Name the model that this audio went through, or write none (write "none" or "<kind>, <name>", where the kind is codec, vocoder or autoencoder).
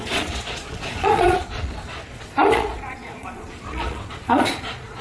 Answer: vocoder, Vocos